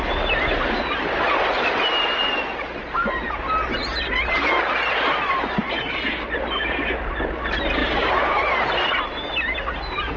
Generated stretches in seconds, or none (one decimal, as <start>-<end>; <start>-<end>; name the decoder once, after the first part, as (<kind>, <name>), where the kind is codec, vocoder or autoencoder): 2.8-3.4 (vocoder, BigVGAN v2); 3.8-4.5; 7.8-8.8

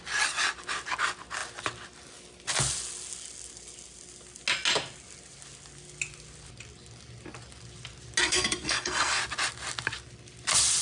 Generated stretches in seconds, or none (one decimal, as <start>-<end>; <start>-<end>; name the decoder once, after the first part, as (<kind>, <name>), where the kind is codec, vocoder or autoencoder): 8.2-9.2 (codec, SNAC)

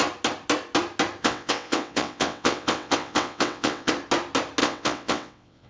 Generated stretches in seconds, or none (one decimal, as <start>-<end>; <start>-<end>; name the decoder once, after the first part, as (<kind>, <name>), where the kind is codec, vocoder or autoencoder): 1.2-3.9 (vocoder, WaveNeXt); 4.6-5.7

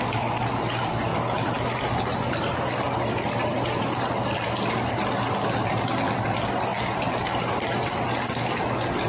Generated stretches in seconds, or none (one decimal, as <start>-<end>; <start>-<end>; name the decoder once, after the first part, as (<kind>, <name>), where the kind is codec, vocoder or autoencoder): none

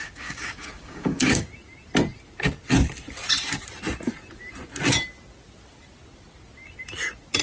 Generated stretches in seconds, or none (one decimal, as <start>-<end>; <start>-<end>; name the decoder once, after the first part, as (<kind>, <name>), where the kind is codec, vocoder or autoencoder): 0.0-1.5 (codec, DAC)

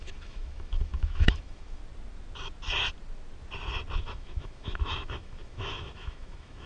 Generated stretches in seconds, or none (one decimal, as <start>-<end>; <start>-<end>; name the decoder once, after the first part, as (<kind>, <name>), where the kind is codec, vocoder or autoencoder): 0.0-1.8 (autoencoder, DAC-VAE); 4.0-6.7

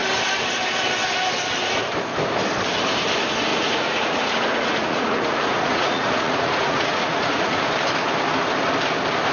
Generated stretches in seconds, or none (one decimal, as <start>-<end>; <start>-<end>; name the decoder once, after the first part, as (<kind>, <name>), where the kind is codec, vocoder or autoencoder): 3.5-7.7 (vocoder, Vocos)

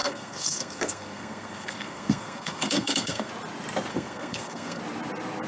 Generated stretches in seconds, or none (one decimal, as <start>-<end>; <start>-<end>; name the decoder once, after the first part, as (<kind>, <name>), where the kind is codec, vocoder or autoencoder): 0.0-3.3 (codec, SNAC); 3.9-4.8